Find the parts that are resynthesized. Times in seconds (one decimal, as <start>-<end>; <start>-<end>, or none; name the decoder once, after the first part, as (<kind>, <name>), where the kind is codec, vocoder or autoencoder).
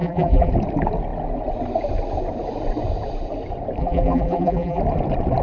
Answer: 0.0-0.5 (vocoder, BigVGAN v2); 3.8-4.8